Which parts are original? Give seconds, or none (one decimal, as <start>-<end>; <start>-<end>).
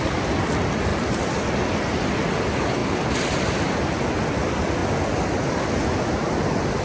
0.5-0.9; 1.5-2.8; 3.7-6.8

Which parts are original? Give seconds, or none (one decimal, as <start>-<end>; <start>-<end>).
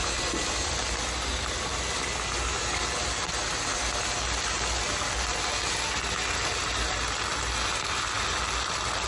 0.0-9.1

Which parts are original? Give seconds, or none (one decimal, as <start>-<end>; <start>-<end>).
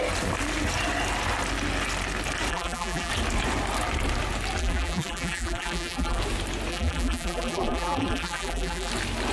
0.0-2.5; 3.1-4.6; 6.2-6.7; 8.9-9.3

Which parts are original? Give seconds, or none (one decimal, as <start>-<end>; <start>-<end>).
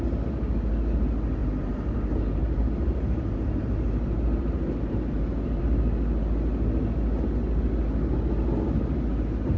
0.0-1.4; 5.6-9.6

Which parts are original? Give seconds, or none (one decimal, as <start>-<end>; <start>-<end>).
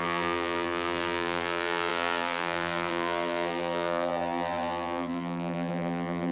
none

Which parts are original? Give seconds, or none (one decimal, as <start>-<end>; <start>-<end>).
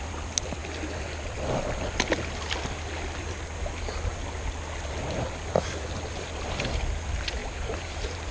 0.0-7.4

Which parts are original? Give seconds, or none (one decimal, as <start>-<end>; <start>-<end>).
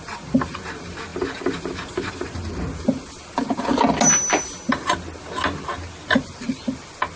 0.0-7.2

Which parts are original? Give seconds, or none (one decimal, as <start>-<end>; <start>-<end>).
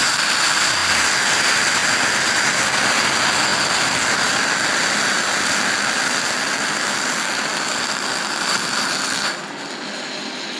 0.0-10.6